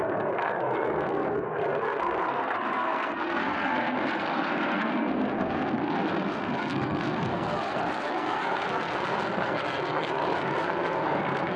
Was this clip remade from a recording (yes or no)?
yes